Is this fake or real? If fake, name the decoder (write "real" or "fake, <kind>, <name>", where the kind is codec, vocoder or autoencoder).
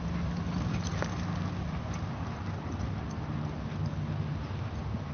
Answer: real